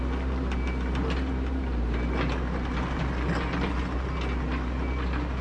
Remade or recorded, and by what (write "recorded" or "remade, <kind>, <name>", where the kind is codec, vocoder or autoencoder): recorded